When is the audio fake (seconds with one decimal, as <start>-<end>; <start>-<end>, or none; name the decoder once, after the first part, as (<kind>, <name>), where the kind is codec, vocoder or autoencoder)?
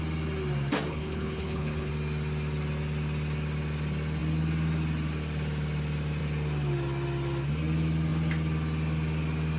0.9-1.9 (codec, HILCodec)